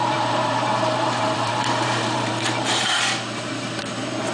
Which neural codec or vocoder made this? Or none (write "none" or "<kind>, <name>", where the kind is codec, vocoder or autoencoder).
vocoder, BigVGAN v2